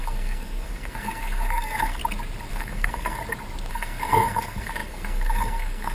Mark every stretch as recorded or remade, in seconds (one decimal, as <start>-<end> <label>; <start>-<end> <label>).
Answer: 0.0-2.0 remade; 2.0-2.5 recorded; 2.5-3.2 remade; 3.2-3.7 recorded; 3.7-5.9 remade